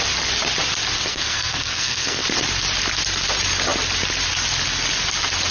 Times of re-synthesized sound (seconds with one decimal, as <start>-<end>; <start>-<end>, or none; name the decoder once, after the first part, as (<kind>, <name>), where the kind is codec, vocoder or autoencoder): 1.1-2.2 (codec, SNAC)